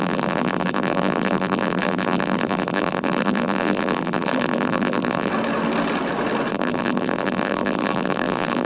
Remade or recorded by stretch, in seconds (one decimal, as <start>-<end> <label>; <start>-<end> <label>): 0.0-5.3 remade; 5.3-6.5 recorded; 6.5-8.7 remade